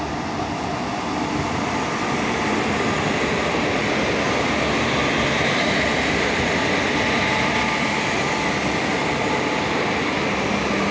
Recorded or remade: recorded